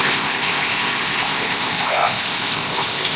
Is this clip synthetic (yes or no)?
yes